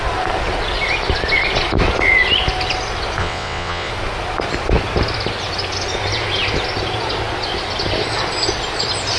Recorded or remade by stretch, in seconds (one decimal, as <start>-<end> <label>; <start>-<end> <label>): 0.0-3.2 recorded; 3.2-3.9 remade; 3.9-9.2 recorded